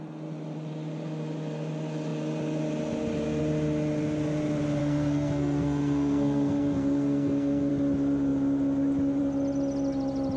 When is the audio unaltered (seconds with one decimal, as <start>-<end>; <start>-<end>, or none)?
0.0-4.8; 7.7-10.4